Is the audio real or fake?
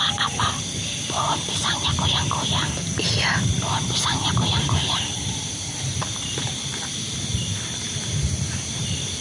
fake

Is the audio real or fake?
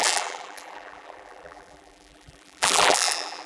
fake